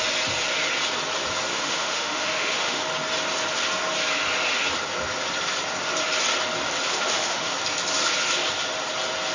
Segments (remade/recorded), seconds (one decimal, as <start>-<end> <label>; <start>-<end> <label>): 0.0-1.5 recorded; 1.5-2.8 remade; 2.8-6.9 recorded; 6.9-7.5 remade; 7.5-9.3 recorded